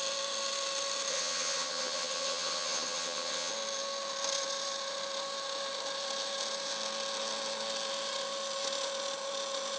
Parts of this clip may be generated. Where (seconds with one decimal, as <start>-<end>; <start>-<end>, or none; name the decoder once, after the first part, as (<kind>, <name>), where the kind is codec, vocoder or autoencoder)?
1.1-3.5 (vocoder, HiFi-GAN)